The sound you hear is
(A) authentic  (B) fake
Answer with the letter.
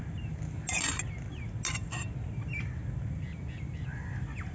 A